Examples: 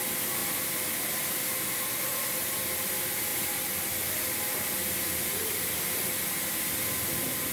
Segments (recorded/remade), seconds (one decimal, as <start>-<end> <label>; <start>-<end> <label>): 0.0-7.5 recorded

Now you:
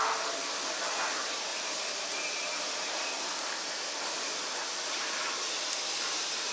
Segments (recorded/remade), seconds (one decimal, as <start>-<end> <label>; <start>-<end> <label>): 0.0-1.5 recorded; 1.5-3.4 remade; 3.4-6.5 recorded

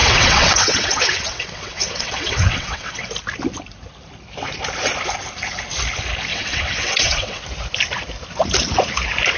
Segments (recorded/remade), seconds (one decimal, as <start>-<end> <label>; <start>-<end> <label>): 0.0-3.1 remade; 3.1-6.3 recorded; 6.3-7.4 remade; 7.4-9.4 recorded

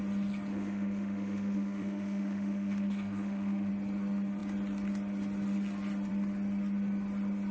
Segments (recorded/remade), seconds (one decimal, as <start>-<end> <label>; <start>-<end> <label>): 0.0-0.5 recorded; 0.5-3.7 remade; 3.7-7.5 recorded